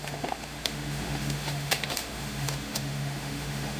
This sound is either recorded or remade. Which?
remade